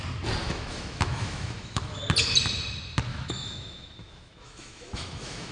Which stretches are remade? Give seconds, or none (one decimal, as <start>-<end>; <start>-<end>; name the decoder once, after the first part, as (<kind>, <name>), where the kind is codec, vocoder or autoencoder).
0.4-2.0 (autoencoder, DAC-VAE); 3.1-5.5